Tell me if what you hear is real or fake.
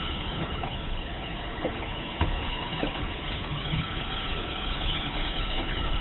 fake